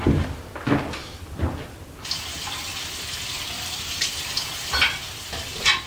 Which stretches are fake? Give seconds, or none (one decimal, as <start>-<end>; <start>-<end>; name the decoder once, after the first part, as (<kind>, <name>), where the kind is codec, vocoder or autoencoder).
none